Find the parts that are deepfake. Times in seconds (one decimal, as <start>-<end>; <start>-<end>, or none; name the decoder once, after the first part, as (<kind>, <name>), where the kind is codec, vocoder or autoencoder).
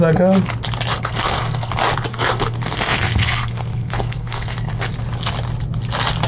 0.9-1.7 (codec, SNAC); 2.1-4.9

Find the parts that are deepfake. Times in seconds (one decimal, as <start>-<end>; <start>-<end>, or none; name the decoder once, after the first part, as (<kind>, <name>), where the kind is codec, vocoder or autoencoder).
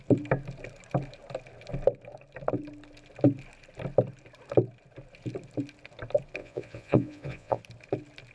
6.4-7.6 (vocoder, Vocos)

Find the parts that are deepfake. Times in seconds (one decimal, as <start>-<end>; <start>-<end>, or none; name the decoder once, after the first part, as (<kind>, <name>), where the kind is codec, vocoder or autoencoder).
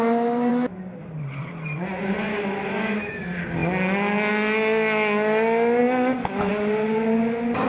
2.3-3.1 (autoencoder, DAC-VAE); 5.8-6.5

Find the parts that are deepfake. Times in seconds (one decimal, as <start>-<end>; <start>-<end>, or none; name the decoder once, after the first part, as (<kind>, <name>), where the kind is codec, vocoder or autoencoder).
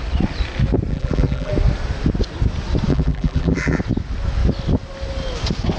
0.9-1.5 (vocoder, BigVGAN v2); 2.9-3.8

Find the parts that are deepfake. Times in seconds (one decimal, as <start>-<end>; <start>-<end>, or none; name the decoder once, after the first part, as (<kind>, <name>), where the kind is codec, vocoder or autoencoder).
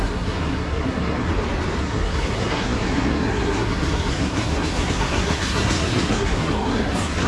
0.0-1.3 (codec, SNAC); 1.8-7.3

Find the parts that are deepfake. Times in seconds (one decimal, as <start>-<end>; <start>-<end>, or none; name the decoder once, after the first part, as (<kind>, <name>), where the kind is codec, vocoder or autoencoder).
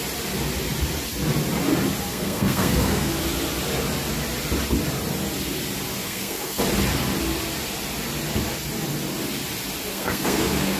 2.1-3.1 (codec, SNAC); 6.0-6.6; 9.9-10.8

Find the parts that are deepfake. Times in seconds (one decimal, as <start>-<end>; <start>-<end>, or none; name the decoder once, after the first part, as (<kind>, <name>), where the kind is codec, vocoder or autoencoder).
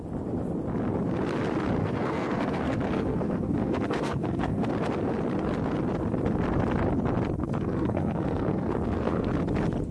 1.8-4.7 (codec, SNAC); 7.4-9.3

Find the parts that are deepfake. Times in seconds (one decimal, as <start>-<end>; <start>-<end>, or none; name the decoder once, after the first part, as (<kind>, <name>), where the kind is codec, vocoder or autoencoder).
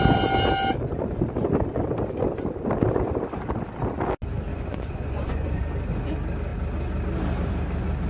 4.5-5.6 (vocoder, Vocos)